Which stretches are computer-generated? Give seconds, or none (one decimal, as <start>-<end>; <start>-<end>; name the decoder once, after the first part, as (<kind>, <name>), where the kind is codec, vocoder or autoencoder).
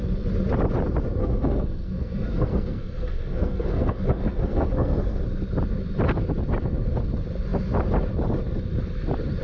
1.2-5.2 (codec, SNAC)